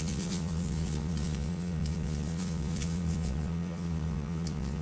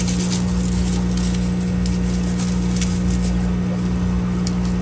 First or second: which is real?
second